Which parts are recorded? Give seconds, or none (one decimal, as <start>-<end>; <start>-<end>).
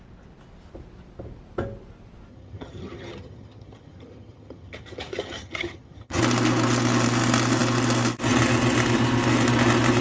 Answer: 0.0-2.3; 6.2-10.0